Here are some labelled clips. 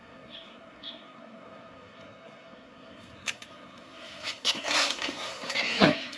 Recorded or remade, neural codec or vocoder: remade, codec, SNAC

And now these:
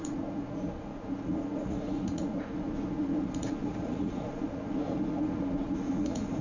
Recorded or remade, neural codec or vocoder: remade, vocoder, Vocos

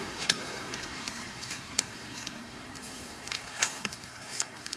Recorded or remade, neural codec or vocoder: remade, codec, SNAC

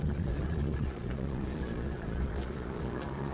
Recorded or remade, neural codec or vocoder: remade, vocoder, Vocos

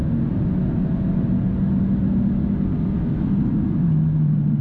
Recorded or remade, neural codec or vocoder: recorded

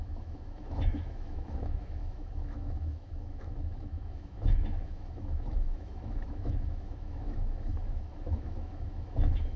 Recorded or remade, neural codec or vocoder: remade, autoencoder, DAC-VAE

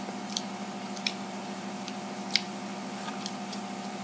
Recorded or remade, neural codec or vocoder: remade, vocoder, BigVGAN v2